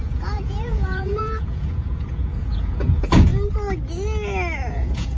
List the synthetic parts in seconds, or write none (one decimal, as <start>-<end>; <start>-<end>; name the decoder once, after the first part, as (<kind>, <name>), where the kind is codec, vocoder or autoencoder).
0.0-3.3 (vocoder, Vocos); 4.7-5.2